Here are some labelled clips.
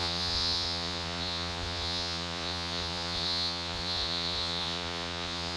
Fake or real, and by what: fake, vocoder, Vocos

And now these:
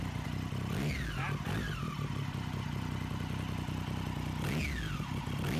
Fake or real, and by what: real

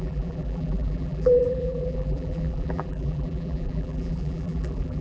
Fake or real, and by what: fake, vocoder, BigVGAN v2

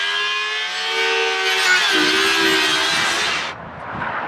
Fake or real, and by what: real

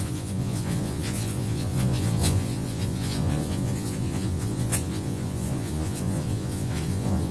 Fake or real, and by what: fake, vocoder, Vocos